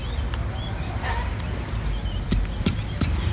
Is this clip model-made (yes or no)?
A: no